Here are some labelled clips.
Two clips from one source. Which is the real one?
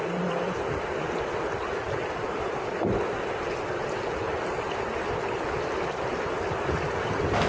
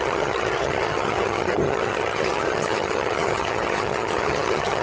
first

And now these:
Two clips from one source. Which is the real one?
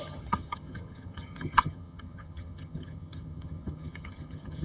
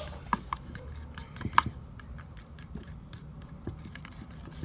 second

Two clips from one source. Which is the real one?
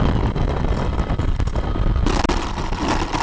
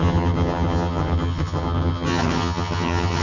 first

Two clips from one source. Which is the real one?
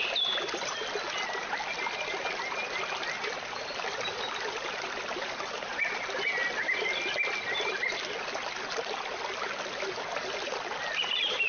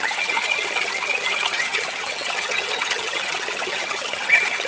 first